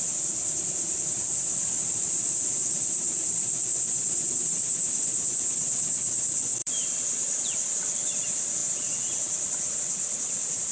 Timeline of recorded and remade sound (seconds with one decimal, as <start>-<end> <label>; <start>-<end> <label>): 0.0-1.5 recorded; 1.5-5.3 remade; 5.3-6.6 recorded; 6.6-7.4 remade; 7.4-10.7 recorded